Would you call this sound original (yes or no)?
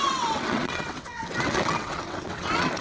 no